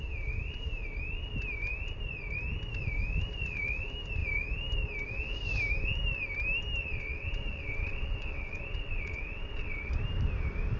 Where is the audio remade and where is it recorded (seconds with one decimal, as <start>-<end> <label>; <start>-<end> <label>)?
0.0-6.8 recorded; 6.8-9.9 remade; 9.9-10.8 recorded